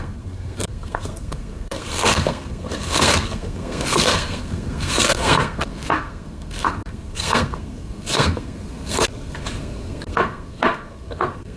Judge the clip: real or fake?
fake